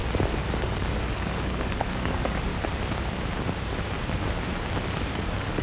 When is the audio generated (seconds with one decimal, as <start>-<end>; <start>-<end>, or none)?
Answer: 0.6-2.5; 4.8-5.6